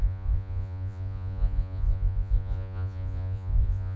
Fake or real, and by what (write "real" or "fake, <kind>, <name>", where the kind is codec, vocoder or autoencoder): fake, vocoder, Vocos